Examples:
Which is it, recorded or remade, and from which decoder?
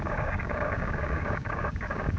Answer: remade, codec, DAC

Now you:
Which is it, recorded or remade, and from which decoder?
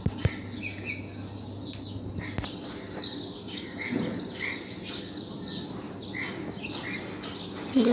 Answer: recorded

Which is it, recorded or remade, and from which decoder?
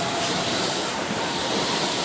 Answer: remade, vocoder, BigVGAN v2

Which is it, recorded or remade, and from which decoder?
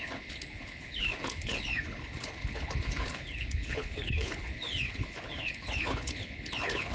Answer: remade, codec, HILCodec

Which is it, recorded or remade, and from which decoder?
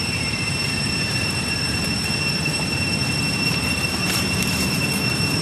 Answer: remade, vocoder, BigVGAN v2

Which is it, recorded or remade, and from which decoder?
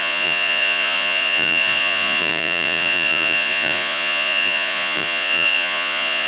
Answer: remade, vocoder, Vocos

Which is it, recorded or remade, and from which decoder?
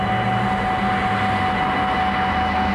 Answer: recorded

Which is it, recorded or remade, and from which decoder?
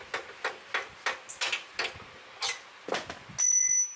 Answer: recorded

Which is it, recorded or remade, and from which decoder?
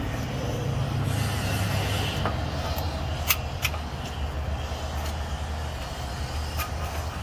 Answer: recorded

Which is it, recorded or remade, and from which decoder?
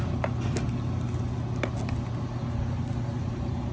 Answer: recorded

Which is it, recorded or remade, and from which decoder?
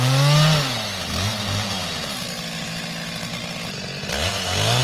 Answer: recorded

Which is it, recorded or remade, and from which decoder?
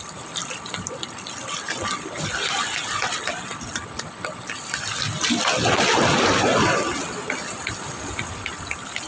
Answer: recorded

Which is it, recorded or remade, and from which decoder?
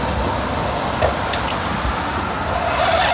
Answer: recorded